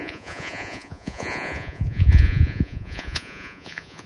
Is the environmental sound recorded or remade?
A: remade